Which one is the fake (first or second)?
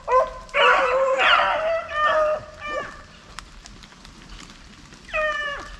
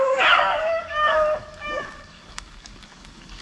second